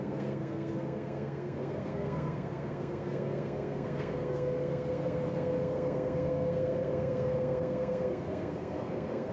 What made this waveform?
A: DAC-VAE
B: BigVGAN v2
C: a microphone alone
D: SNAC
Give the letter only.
D